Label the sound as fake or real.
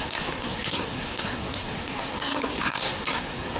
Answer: fake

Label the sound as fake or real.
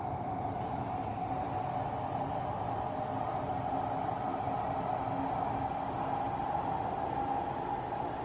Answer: real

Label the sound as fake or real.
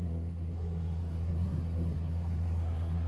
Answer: fake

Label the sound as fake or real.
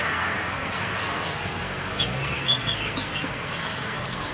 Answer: fake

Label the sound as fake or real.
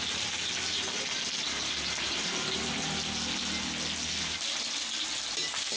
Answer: real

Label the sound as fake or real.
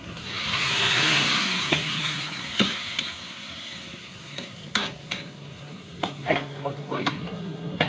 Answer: fake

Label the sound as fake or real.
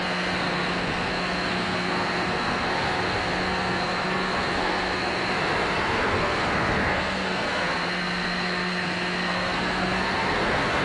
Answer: fake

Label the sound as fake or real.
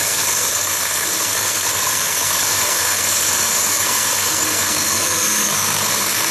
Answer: fake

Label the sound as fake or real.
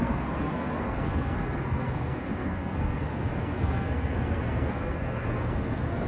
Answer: fake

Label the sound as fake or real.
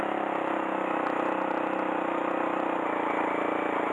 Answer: real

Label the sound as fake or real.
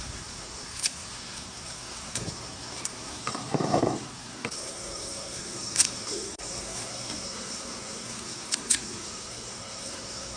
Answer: fake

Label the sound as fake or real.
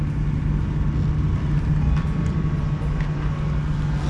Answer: real